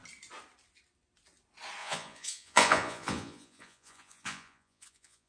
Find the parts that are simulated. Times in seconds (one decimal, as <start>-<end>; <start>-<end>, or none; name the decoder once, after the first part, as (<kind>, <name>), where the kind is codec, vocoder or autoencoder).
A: 1.8-5.3 (vocoder, Vocos)